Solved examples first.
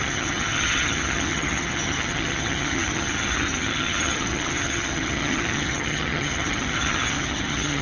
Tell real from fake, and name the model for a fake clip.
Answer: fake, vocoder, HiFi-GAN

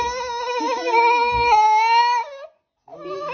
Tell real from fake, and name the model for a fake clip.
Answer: real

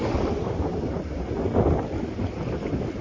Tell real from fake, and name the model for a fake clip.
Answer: real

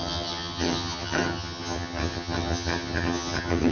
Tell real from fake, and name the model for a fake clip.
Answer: fake, vocoder, HiFi-GAN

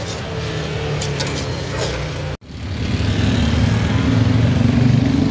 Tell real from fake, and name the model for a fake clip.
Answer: real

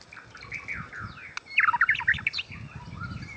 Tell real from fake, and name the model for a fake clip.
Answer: real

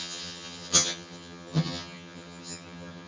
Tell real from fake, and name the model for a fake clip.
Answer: fake, vocoder, HiFi-GAN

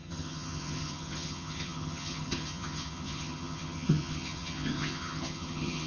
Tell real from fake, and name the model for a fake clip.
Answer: fake, vocoder, HiFi-GAN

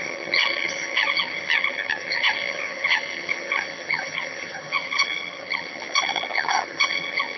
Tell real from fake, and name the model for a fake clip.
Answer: fake, vocoder, HiFi-GAN